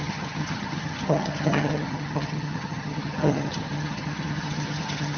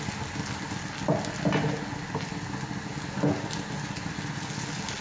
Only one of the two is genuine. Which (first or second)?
second